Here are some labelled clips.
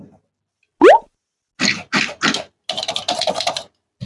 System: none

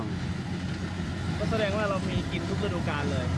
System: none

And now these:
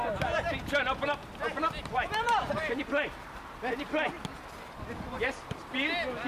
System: none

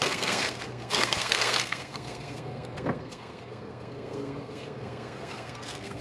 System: codec, SNAC